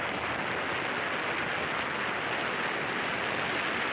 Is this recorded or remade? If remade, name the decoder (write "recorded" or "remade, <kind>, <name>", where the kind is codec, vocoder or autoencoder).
recorded